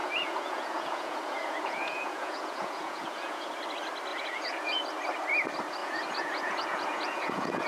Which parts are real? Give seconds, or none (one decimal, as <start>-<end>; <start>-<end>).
3.5-4.1; 4.8-5.8